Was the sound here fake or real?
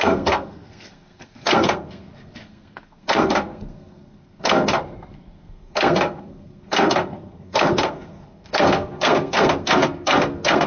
fake